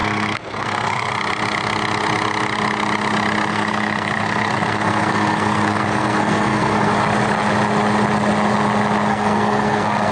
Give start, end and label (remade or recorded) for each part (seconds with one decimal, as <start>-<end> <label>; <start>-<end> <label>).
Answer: 0.0-1.1 remade; 1.1-3.5 recorded; 3.5-6.9 remade; 6.9-9.1 recorded; 9.1-10.1 remade